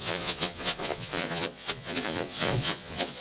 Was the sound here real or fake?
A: fake